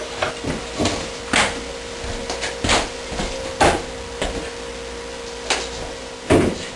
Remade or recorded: recorded